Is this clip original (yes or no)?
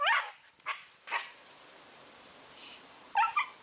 yes